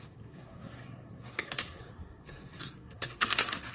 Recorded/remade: remade